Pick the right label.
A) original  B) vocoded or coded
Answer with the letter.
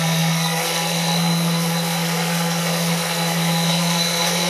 B